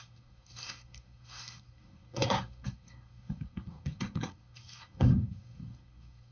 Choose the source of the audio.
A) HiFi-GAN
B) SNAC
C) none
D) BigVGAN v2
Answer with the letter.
B